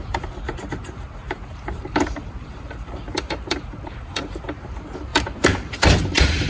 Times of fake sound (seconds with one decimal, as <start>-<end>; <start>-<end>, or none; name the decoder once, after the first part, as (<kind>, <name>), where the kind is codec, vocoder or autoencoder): 1.2-4.4 (vocoder, BigVGAN v2); 5.1-6.5